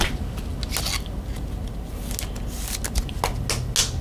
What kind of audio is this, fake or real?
real